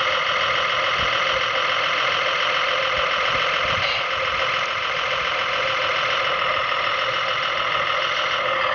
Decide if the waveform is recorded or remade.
recorded